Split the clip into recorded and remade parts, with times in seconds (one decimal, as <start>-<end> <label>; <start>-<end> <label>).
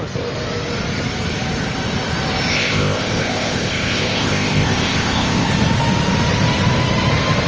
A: 0.0-2.5 recorded; 2.5-5.5 remade; 5.5-7.5 recorded